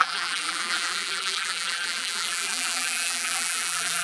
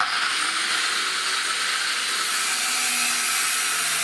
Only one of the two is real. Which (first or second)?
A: second